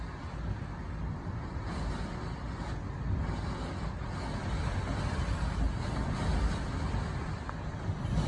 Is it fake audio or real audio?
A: real